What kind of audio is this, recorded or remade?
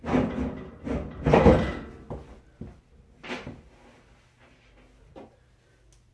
recorded